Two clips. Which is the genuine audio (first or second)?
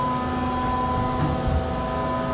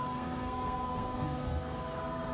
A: first